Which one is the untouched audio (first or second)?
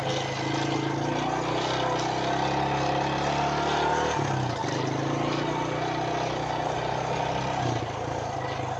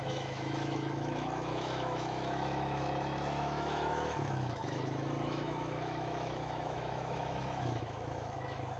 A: first